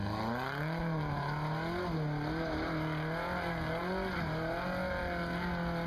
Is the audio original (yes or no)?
yes